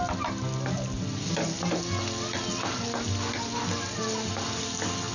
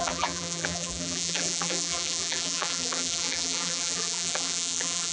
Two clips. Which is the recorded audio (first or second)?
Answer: first